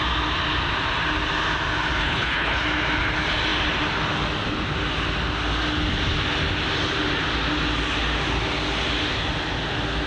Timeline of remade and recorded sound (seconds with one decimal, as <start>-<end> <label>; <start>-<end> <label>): 0.0-2.0 recorded; 2.0-2.6 remade; 2.6-10.1 recorded